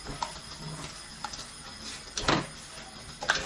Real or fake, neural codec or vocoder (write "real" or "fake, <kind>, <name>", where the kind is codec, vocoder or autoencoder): real